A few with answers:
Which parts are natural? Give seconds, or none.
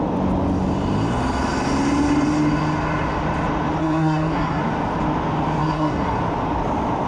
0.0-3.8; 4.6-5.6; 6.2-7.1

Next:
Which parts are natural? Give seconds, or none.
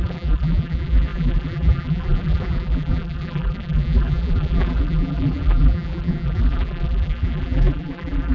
none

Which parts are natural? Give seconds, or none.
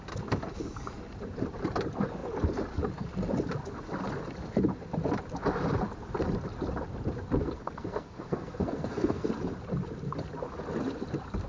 0.0-7.4; 9.3-11.5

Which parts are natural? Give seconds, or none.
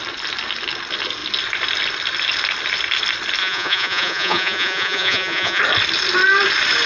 0.0-3.4; 5.6-6.9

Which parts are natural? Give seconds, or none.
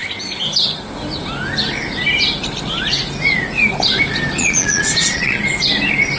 0.0-4.4; 5.4-6.2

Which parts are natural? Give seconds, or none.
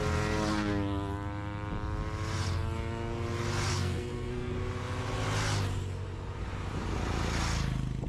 0.0-3.7; 4.5-8.1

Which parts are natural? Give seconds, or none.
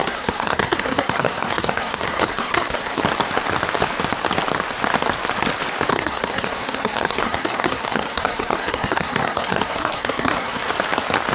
3.0-5.9; 10.7-11.3